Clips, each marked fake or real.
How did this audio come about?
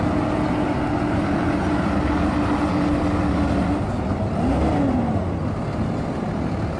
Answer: real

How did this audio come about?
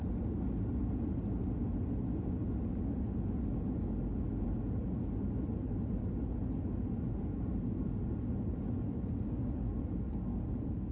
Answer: real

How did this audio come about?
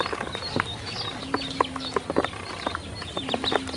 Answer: real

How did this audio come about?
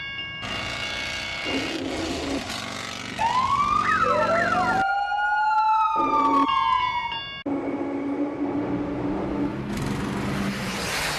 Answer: real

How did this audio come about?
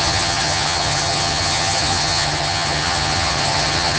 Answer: fake